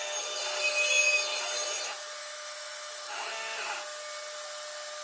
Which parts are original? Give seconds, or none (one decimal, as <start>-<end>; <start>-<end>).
0.0-2.2; 3.3-5.0